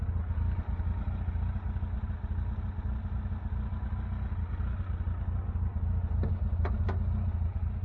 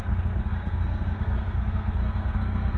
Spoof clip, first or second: second